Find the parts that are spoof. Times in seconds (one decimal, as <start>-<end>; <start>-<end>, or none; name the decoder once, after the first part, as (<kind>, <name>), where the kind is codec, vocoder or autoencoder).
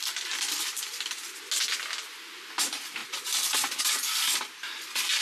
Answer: 0.0-0.7 (vocoder, BigVGAN v2); 2.6-3.0; 3.8-5.2